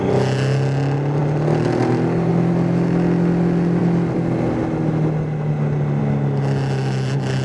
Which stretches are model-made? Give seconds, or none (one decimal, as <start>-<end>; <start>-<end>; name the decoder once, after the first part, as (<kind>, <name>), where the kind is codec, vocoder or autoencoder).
none